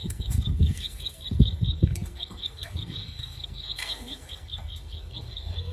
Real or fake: fake